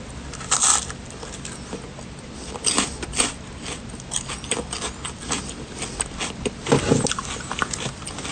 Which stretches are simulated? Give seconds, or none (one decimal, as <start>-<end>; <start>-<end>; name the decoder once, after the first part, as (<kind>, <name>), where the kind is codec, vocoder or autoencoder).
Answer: none